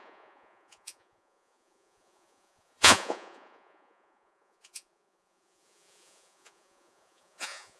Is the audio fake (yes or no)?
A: yes